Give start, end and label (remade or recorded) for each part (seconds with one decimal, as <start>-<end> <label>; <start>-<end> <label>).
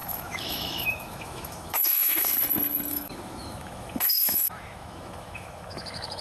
0.0-2.3 remade; 2.3-2.9 recorded; 2.9-6.2 remade